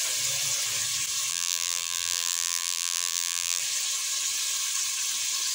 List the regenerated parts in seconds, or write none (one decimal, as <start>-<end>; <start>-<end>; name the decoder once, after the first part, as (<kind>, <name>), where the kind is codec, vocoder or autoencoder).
1.3-3.6 (vocoder, BigVGAN v2)